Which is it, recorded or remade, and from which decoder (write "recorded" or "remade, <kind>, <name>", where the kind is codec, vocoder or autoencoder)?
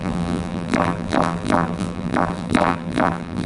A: remade, vocoder, BigVGAN v2